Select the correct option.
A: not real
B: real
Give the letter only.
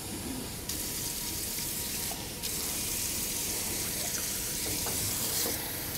A